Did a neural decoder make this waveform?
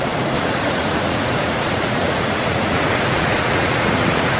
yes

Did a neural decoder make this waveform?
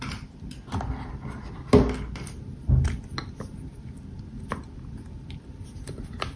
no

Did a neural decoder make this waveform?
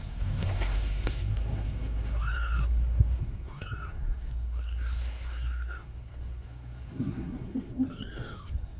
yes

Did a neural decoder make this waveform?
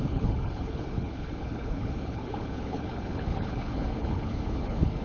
yes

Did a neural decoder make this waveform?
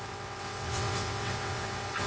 yes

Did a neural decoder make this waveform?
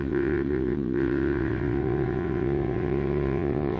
yes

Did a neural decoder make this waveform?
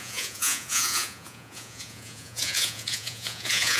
yes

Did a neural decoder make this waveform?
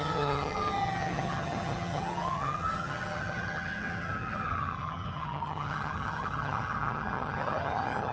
yes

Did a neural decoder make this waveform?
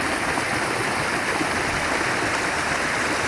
no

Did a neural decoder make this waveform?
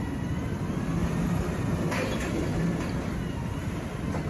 no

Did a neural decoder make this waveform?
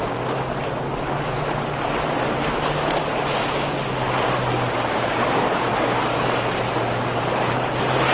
no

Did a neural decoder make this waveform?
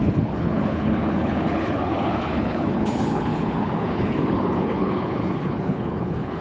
yes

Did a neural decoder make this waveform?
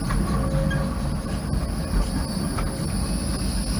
no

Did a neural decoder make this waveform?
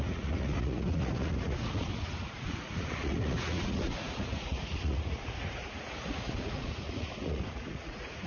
yes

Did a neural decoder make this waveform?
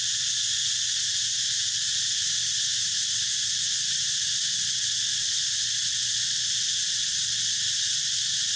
no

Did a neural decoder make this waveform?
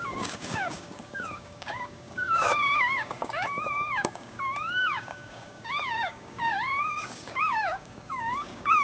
yes